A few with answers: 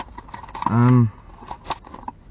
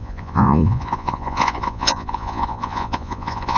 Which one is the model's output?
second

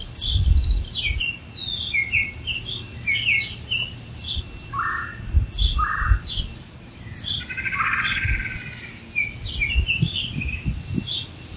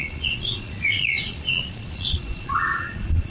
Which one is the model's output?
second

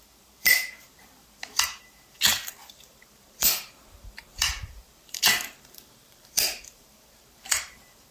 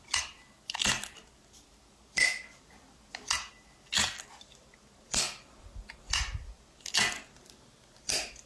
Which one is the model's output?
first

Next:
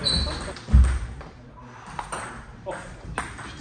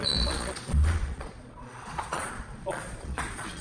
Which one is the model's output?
second